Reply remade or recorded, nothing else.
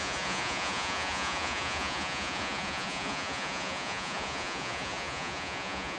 remade